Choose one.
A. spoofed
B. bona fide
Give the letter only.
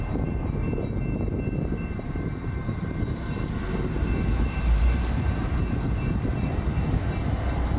A